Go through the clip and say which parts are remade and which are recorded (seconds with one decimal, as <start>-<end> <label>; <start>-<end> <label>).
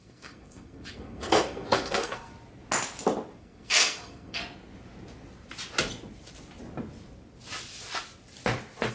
0.0-2.3 remade; 2.3-3.4 recorded; 3.4-4.4 remade; 4.4-8.9 recorded